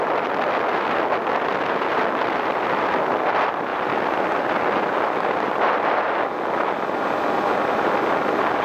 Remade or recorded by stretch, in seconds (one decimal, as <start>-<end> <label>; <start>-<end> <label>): 0.0-8.6 recorded